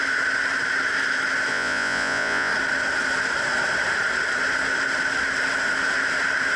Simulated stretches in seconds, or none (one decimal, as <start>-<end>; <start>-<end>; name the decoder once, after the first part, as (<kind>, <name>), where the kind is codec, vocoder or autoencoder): 1.5-2.5 (vocoder, Vocos)